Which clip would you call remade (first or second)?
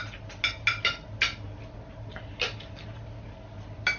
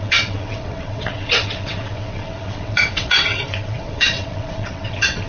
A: second